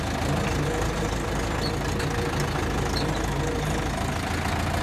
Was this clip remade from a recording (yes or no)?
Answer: no